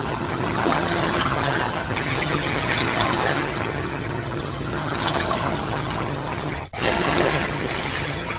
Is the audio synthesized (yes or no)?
yes